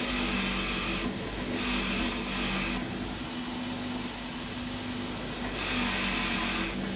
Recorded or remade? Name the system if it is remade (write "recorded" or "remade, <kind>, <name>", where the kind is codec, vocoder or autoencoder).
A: recorded